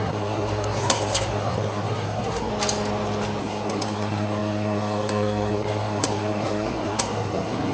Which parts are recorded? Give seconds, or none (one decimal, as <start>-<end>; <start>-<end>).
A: 2.5-3.4